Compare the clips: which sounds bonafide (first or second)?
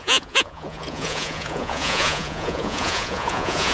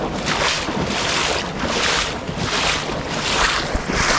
second